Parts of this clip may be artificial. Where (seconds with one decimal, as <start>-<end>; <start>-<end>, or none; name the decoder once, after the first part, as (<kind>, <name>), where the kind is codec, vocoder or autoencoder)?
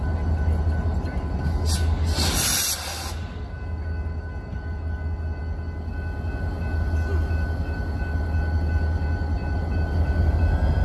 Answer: none